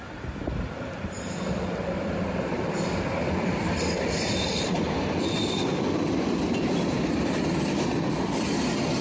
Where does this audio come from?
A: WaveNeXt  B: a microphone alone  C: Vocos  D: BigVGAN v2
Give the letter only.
D